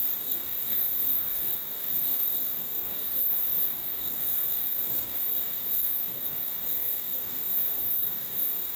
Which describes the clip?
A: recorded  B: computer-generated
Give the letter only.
B